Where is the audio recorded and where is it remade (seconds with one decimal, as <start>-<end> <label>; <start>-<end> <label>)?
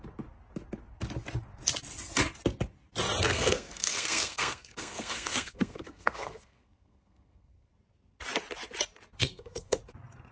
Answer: 0.0-3.3 recorded; 3.3-7.7 remade; 7.7-9.2 recorded; 9.2-9.8 remade; 9.8-10.3 recorded